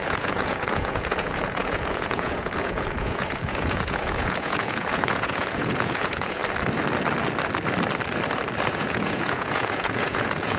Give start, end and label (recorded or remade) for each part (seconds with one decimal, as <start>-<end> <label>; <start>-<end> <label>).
0.0-6.4 remade; 6.4-8.7 recorded; 8.7-10.6 remade